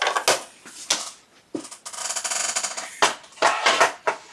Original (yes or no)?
yes